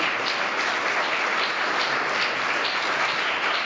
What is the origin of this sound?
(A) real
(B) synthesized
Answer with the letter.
A